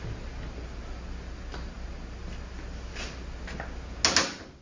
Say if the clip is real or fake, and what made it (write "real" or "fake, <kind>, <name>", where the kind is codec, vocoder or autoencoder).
real